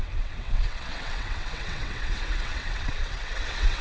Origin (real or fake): fake